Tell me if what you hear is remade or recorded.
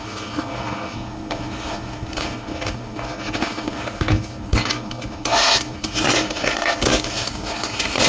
remade